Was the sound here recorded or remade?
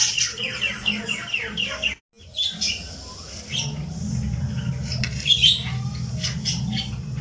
recorded